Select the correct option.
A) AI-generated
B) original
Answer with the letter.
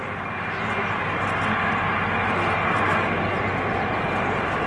B